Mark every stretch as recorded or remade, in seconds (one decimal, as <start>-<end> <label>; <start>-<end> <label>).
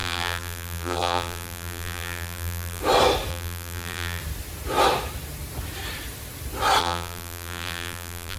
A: 0.0-2.8 remade; 2.8-3.3 recorded; 3.3-4.2 remade; 4.2-6.8 recorded; 6.8-8.4 remade